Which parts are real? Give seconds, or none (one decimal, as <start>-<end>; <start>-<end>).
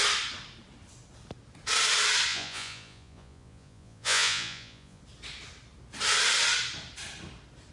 0.0-2.3; 5.0-7.7